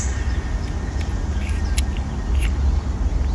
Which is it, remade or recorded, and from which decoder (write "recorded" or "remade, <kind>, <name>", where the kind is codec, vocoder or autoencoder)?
recorded